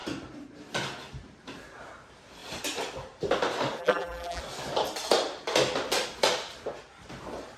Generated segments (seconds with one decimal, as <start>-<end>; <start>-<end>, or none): 3.8-4.4